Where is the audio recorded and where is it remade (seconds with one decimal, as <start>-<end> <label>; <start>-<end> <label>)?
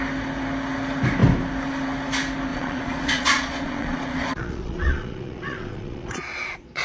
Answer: 0.0-2.5 recorded; 2.5-6.8 remade